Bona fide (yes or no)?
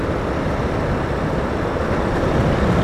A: yes